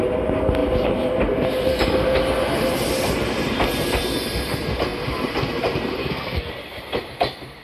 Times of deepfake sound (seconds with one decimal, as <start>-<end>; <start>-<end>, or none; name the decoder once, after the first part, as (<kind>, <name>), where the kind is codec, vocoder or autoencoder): 6.0-6.5 (codec, SNAC)